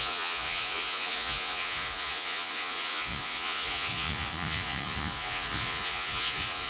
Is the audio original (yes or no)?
no